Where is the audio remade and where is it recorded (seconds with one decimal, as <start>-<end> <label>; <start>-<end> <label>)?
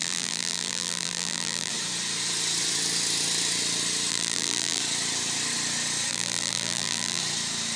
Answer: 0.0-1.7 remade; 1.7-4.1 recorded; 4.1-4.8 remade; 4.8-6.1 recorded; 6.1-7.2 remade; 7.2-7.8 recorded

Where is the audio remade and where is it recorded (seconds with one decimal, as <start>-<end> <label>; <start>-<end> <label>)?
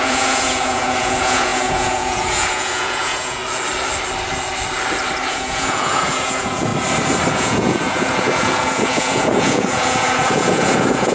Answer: 0.0-3.4 remade; 3.4-5.3 recorded; 5.3-6.7 remade; 6.7-7.3 recorded; 7.3-11.1 remade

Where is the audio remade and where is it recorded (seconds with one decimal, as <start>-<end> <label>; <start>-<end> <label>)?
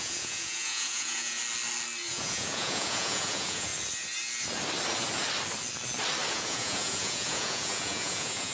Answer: 0.0-1.4 remade; 1.4-2.1 recorded; 2.1-3.7 remade; 3.7-6.3 recorded; 6.3-8.5 remade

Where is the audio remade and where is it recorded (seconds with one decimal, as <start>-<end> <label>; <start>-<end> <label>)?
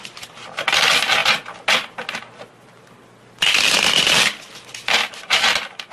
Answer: 0.0-5.9 recorded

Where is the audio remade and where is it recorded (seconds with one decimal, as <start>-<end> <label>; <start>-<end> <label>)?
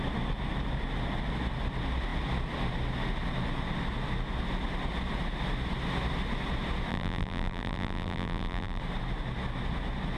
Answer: 0.0-6.9 recorded; 6.9-8.8 remade; 8.8-10.2 recorded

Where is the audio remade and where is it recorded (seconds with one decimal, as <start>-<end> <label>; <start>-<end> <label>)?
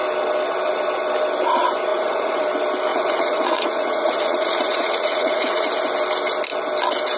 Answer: 0.0-1.9 recorded; 1.9-2.4 remade; 2.4-2.9 recorded; 2.9-5.7 remade; 5.7-7.2 recorded